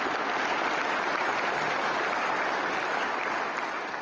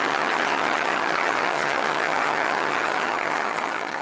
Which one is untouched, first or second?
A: first